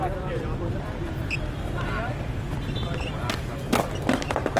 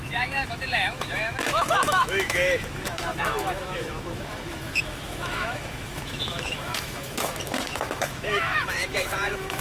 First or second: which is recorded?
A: first